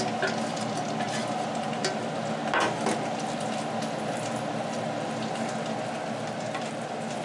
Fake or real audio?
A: real